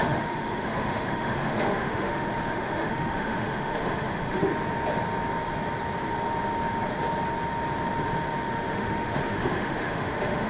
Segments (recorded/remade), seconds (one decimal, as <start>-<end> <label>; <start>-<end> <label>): 0.0-4.5 remade; 4.5-8.5 recorded; 8.5-10.5 remade